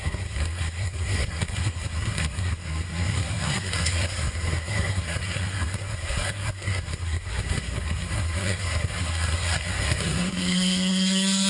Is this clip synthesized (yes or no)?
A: yes